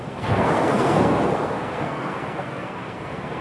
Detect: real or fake fake